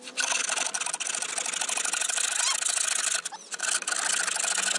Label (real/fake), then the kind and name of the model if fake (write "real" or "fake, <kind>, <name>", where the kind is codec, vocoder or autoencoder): real